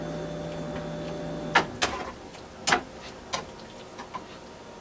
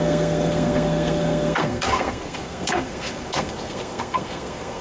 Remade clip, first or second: second